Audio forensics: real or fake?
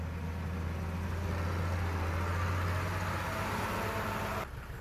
real